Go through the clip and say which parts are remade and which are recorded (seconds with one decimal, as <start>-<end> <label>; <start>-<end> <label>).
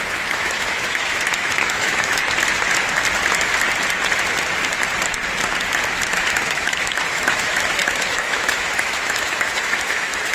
0.0-2.2 remade; 2.2-5.9 recorded; 5.9-10.3 remade